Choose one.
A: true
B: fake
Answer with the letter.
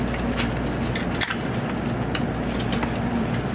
A